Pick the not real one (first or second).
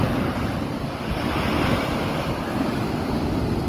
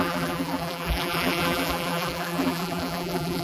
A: second